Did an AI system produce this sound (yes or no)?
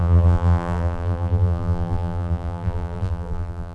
yes